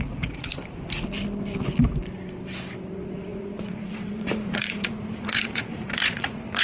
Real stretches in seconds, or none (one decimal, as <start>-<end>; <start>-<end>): 0.5-2.9